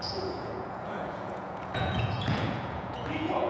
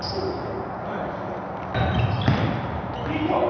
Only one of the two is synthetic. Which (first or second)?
first